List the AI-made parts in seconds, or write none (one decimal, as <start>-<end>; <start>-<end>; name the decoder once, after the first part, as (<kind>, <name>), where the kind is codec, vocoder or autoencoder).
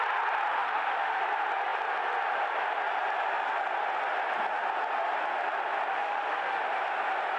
0.5-1.2 (autoencoder, DAC-VAE); 5.9-6.6